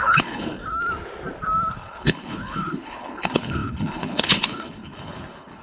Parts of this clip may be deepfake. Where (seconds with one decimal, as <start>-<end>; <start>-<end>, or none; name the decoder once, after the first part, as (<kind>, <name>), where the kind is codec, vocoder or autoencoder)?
0.0-0.6 (codec, HILCodec); 1.7-5.6